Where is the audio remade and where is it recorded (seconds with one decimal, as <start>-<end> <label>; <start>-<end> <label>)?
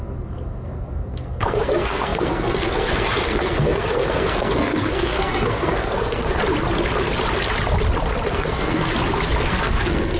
0.0-6.4 remade; 6.4-8.3 recorded; 8.3-8.9 remade; 8.9-9.4 recorded; 9.4-10.2 remade